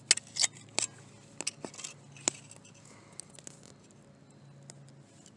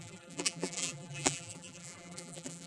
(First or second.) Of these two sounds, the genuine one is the first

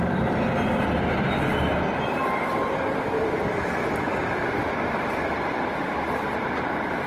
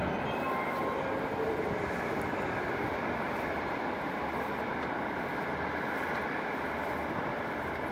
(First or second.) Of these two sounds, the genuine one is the second